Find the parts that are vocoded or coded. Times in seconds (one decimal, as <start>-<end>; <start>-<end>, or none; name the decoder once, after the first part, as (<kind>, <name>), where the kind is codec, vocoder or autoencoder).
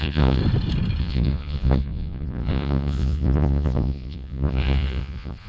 0.0-0.4 (vocoder, Vocos); 1.0-5.5